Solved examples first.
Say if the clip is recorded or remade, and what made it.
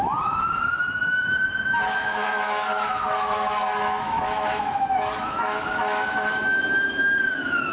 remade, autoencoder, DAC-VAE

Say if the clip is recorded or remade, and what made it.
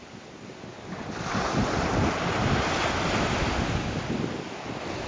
recorded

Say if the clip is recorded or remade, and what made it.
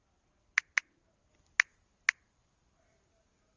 recorded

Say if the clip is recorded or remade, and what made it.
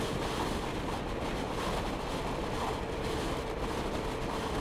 recorded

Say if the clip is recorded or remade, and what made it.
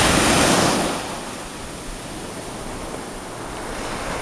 recorded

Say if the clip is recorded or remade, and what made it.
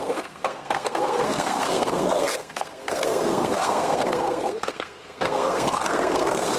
remade, codec, SNAC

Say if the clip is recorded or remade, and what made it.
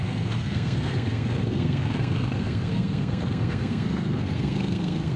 remade, codec, SNAC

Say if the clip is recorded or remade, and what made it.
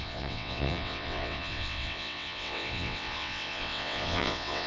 remade, vocoder, WaveNeXt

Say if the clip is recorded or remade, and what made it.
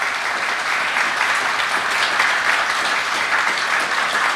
recorded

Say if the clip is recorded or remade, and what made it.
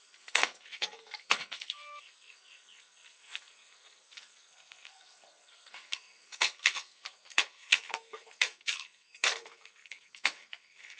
remade, codec, SNAC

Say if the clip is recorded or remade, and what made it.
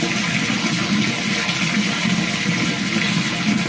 recorded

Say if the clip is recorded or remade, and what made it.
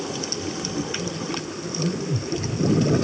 recorded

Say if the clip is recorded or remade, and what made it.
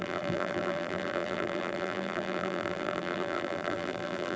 remade, vocoder, BigVGAN v2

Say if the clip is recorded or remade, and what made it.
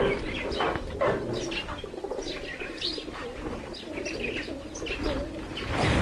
remade, vocoder, BigVGAN v2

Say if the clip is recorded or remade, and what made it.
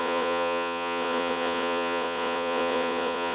remade, vocoder, Vocos